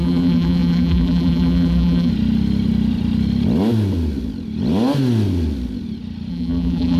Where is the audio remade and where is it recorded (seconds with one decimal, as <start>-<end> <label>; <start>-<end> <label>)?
0.0-2.1 remade; 2.1-6.3 recorded; 6.3-7.0 remade